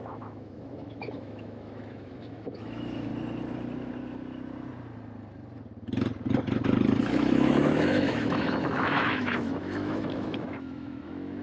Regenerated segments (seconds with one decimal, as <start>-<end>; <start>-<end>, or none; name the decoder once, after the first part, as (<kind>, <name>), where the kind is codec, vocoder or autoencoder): 0.0-3.1 (autoencoder, DAC-VAE); 7.0-11.4